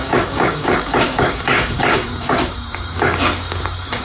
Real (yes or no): no